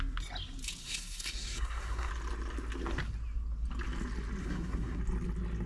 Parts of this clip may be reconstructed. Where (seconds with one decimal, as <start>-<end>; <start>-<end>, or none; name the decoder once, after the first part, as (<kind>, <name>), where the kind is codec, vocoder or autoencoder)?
0.8-2.1 (codec, SNAC); 4.4-5.0